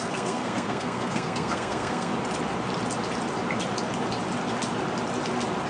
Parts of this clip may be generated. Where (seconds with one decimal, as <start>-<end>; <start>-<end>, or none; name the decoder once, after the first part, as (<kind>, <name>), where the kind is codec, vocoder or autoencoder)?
0.0-2.1 (codec, SNAC)